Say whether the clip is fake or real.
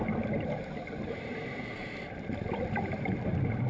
real